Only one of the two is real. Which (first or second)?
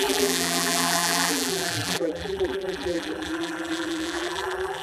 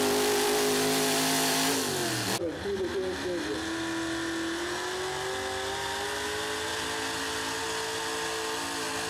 second